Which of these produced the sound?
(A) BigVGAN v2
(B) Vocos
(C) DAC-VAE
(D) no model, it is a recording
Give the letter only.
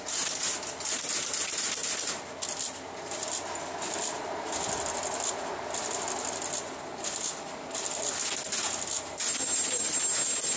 D